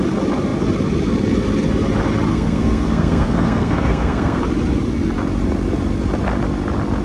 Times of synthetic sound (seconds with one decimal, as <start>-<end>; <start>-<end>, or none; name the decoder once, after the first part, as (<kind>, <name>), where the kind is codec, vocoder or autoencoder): 2.3-4.4 (codec, SNAC)